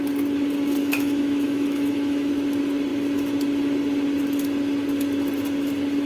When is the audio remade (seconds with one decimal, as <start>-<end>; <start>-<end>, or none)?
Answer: 0.8-2.3